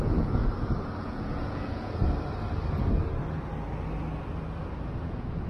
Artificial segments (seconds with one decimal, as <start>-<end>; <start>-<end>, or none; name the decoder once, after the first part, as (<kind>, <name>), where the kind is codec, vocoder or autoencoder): 0.0-0.4 (vocoder, Vocos); 1.0-2.0; 5.0-5.5